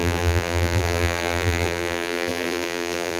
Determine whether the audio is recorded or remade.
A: remade